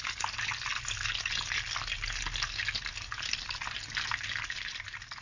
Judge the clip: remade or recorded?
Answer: recorded